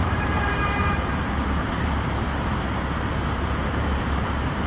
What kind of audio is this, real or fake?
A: fake